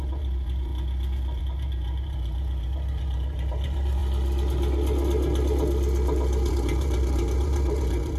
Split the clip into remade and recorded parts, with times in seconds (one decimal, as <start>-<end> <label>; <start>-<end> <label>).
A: 0.0-0.7 remade; 0.7-1.4 recorded; 1.4-4.0 remade; 4.0-6.5 recorded; 6.5-8.2 remade